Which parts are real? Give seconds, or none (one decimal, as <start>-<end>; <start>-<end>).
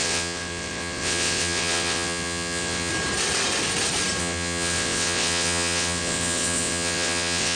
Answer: 2.9-4.2